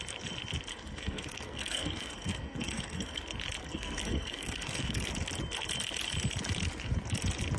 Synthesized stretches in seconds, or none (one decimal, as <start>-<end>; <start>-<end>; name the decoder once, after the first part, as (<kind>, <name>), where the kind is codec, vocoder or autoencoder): 0.7-3.2 (codec, SNAC); 3.6-5.1